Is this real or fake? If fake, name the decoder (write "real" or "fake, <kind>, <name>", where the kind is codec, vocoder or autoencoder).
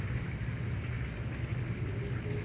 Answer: real